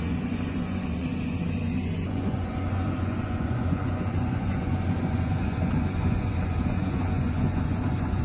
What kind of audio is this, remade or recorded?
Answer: remade